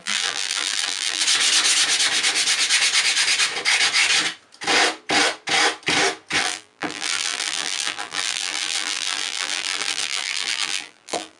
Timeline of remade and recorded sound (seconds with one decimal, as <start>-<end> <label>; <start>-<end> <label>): 0.0-1.2 remade; 1.2-6.4 recorded; 6.4-11.4 remade